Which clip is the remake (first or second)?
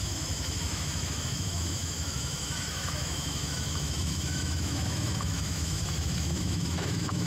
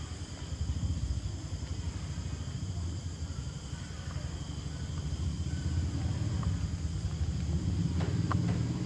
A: first